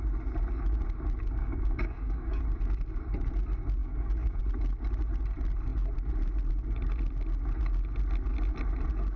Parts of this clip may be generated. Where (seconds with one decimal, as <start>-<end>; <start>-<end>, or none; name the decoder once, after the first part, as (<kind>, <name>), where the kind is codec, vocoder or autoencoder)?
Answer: 1.4-2.4 (codec, DAC); 3.8-4.4